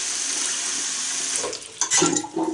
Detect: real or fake real